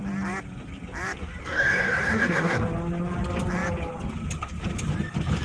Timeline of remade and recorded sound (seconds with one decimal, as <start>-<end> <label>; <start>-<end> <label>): 0.0-1.4 recorded; 1.4-2.6 remade; 2.6-5.4 recorded